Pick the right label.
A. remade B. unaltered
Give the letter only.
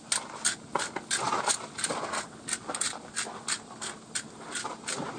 B